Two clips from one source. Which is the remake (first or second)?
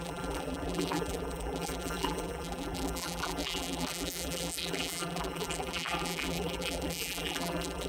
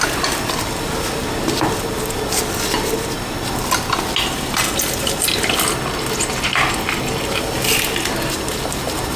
first